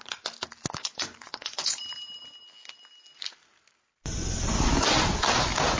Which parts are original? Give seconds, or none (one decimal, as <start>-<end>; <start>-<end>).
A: 0.0-0.8; 1.8-5.8